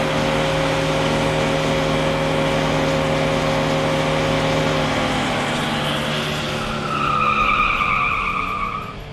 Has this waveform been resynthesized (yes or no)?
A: no